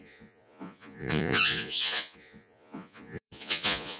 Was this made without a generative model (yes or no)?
no